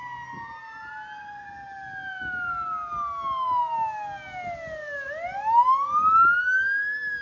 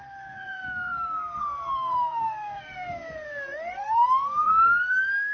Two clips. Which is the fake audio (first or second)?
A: second